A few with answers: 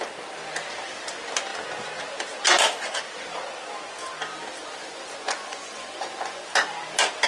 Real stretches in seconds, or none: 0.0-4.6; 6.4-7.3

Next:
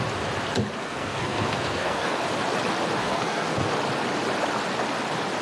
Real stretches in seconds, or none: 0.0-0.8; 2.2-3.0; 3.7-5.4